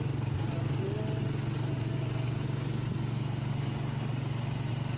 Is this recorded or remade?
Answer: recorded